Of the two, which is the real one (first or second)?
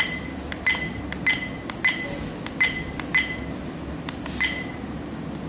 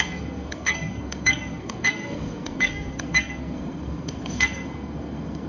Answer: first